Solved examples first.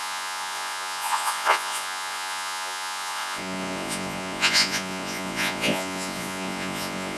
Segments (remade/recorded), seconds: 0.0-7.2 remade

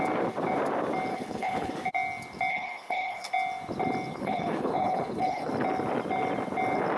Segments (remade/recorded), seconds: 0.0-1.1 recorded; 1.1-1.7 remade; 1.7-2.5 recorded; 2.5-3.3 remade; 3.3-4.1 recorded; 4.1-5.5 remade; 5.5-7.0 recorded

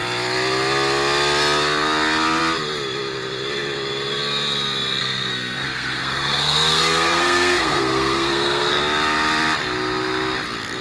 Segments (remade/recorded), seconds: 0.0-5.0 recorded; 5.0-8.8 remade; 8.8-10.8 recorded

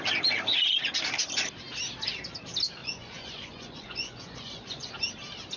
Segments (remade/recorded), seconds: 0.0-2.8 recorded; 2.8-4.9 remade; 4.9-5.6 recorded

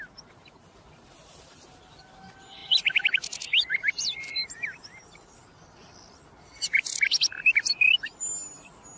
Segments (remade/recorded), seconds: 0.0-9.0 recorded

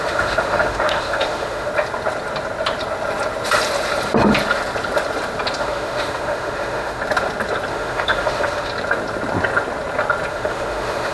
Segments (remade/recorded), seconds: 0.0-1.7 remade; 1.7-5.6 recorded; 5.6-7.0 remade; 7.0-7.7 recorded; 7.7-8.7 remade; 8.7-10.3 recorded; 10.3-11.1 remade